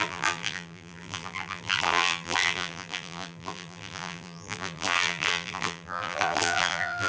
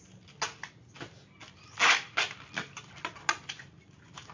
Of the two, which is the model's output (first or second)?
first